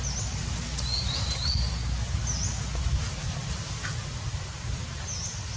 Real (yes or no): yes